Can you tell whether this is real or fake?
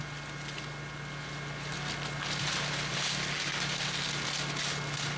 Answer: real